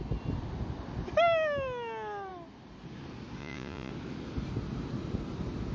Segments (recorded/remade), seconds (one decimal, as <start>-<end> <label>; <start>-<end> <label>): 0.0-3.4 recorded; 3.4-3.9 remade; 3.9-5.7 recorded